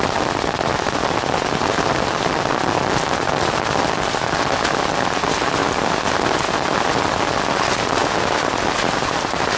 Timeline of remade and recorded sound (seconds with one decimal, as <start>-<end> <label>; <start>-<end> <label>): 0.0-9.6 recorded

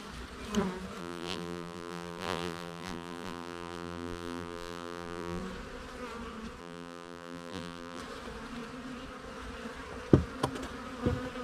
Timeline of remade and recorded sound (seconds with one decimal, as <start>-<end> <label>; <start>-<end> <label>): 0.0-1.0 recorded; 1.0-5.4 remade; 5.4-6.6 recorded; 6.6-8.0 remade; 8.0-11.4 recorded

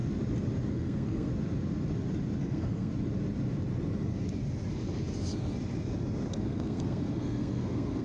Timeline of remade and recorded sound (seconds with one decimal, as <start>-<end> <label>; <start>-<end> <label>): 0.0-0.7 recorded; 0.7-1.3 remade; 1.3-2.4 recorded; 2.4-2.9 remade; 2.9-6.4 recorded; 6.4-8.0 remade

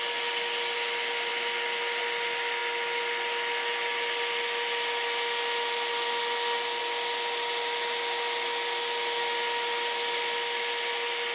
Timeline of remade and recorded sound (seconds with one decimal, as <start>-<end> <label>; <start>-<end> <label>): 0.0-11.3 recorded

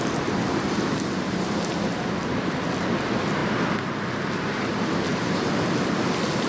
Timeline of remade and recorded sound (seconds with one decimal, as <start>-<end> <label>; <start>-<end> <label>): 0.0-6.5 recorded

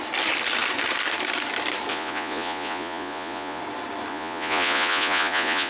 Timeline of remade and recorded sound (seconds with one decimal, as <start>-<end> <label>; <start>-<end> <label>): 0.0-1.9 recorded; 1.9-3.6 remade; 3.6-4.1 recorded; 4.1-5.7 remade

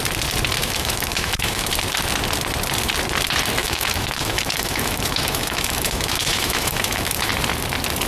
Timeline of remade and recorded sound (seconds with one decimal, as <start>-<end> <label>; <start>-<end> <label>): 0.0-0.6 recorded; 0.6-1.7 remade; 1.7-3.6 recorded; 3.6-7.3 remade; 7.3-8.1 recorded